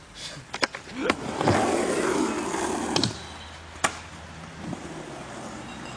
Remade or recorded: recorded